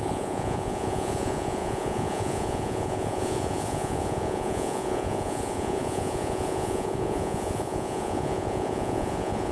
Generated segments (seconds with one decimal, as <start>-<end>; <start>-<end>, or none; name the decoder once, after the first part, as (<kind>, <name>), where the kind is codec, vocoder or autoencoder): 0.0-9.5 (vocoder, Vocos)